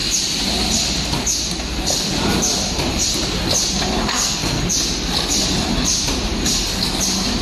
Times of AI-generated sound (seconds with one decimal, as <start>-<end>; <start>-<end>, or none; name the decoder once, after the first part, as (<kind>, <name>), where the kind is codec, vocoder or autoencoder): 4.1-4.6 (codec, SNAC)